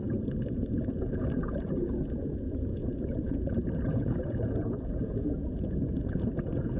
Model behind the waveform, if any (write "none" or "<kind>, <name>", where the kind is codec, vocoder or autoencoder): vocoder, Vocos